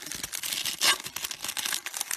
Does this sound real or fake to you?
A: real